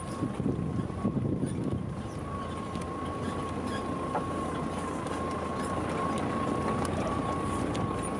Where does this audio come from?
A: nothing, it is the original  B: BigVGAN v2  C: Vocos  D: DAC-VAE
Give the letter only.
A